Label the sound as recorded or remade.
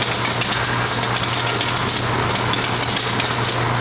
recorded